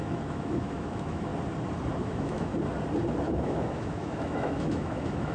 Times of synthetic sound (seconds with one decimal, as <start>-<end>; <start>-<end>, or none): 0.0-1.3; 2.0-2.5; 3.2-5.3